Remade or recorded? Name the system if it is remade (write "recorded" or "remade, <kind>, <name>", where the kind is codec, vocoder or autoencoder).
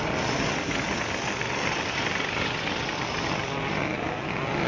recorded